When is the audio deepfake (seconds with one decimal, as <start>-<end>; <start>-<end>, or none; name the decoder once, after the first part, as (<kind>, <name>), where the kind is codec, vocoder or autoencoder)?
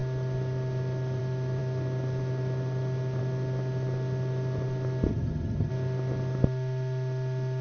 5.1-5.7 (vocoder, HiFi-GAN)